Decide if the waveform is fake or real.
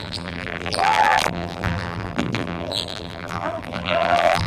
fake